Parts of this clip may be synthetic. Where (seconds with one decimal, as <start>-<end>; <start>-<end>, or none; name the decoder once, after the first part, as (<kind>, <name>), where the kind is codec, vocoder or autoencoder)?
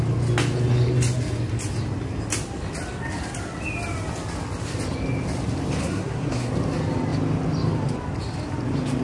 5.8-6.5 (codec, SNAC)